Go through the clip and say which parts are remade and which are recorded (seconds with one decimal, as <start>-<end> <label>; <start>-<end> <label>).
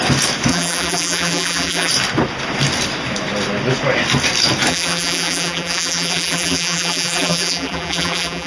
0.0-0.5 recorded; 0.5-1.9 remade; 1.9-4.7 recorded; 4.7-8.5 remade